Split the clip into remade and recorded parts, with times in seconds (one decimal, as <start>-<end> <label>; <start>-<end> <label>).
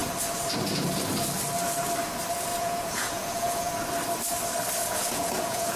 0.0-2.5 recorded; 2.5-3.7 remade; 3.7-4.8 recorded; 4.8-5.8 remade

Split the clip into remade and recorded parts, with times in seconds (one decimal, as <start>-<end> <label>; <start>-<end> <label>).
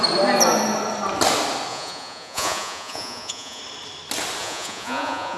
0.0-1.7 recorded; 1.7-3.6 remade; 3.6-4.4 recorded; 4.4-5.4 remade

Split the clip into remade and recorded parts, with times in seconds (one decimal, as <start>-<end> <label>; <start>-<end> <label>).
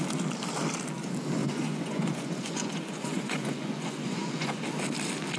0.0-1.4 recorded; 1.4-4.6 remade; 4.6-5.4 recorded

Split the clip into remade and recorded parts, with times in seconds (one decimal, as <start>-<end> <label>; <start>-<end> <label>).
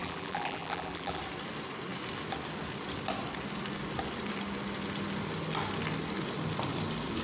0.0-1.2 remade; 1.2-7.2 recorded